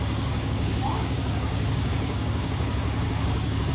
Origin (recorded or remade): remade